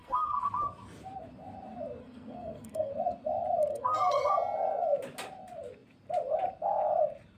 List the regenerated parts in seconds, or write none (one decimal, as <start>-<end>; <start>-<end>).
0.0-0.5; 2.0-2.9; 3.7-4.3